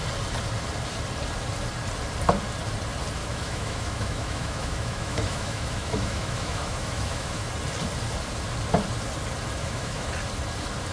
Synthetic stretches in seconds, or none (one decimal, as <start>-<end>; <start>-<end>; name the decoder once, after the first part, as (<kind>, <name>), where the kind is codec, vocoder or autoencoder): 3.2-7.5 (autoencoder, DAC-VAE); 9.6-10.1